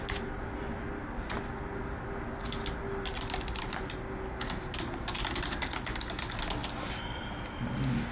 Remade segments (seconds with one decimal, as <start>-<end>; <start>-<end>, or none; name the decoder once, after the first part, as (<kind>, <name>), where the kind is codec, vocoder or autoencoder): none